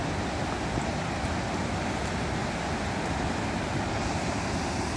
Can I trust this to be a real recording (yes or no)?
yes